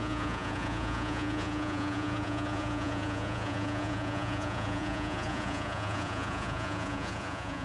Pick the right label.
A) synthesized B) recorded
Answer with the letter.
A